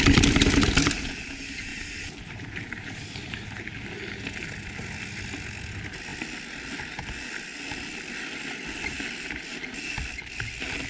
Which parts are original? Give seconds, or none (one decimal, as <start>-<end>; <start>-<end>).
0.0-1.7; 3.6-10.9